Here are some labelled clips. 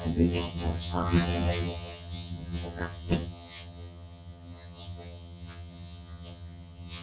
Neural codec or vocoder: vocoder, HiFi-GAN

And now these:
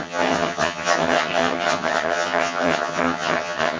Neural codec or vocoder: vocoder, HiFi-GAN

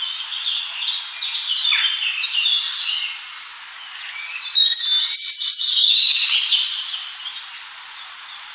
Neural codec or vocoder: none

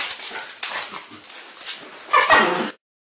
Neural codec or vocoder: none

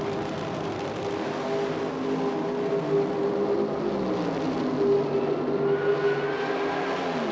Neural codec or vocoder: none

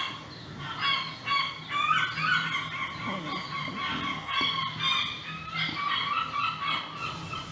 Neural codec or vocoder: none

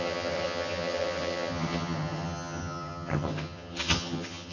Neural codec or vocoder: vocoder, HiFi-GAN